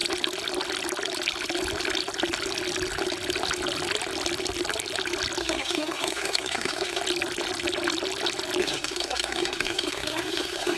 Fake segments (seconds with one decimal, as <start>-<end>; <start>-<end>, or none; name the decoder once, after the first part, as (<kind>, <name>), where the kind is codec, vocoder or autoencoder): 5.4-7.0 (codec, SNAC); 8.6-10.8